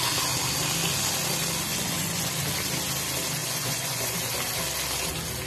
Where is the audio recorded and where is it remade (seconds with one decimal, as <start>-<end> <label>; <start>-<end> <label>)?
0.0-1.7 recorded; 1.7-2.3 remade; 2.3-3.4 recorded; 3.4-4.3 remade; 4.3-5.5 recorded